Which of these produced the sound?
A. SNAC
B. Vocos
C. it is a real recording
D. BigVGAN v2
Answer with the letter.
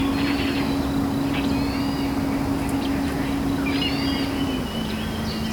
C